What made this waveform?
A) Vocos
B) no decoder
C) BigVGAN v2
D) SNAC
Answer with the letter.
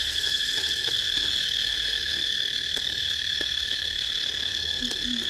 D